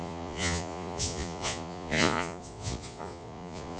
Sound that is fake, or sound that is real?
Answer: fake